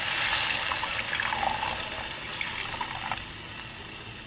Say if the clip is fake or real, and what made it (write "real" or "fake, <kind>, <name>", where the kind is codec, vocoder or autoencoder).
real